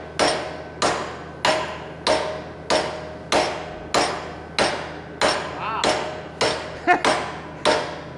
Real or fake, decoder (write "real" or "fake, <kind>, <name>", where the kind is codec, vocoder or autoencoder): real